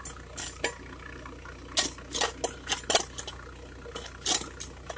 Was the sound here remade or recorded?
recorded